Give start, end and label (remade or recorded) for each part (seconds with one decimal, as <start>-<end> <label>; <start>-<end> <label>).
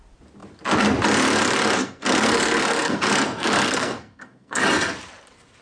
0.0-1.8 recorded; 1.8-4.6 remade; 4.6-5.6 recorded